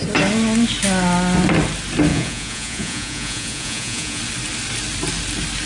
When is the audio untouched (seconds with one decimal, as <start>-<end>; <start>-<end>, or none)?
0.0-2.1; 4.2-5.7

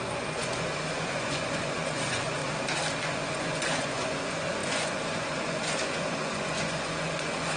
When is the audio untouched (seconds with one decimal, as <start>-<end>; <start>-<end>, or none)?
2.4-3.0

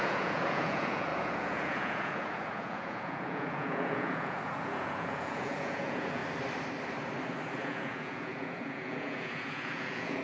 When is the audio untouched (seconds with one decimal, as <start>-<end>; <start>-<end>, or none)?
6.2-7.6

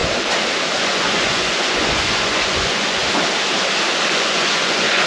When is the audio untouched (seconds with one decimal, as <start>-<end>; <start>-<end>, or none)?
0.0-0.7; 3.0-4.1